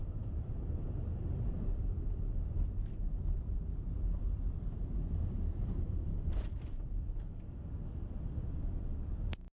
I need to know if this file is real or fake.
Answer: fake